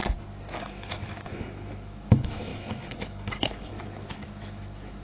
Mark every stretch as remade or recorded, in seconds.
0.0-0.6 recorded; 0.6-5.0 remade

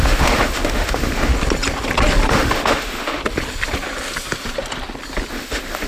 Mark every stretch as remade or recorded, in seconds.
0.0-1.3 remade; 1.3-2.3 recorded; 2.3-3.2 remade; 3.2-5.3 recorded; 5.3-5.9 remade